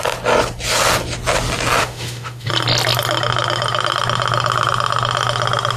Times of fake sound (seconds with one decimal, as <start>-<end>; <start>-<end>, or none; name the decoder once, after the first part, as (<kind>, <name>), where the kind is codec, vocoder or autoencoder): 1.8-2.5 (autoencoder, DAC-VAE)